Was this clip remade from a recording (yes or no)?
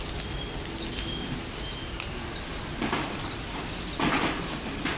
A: no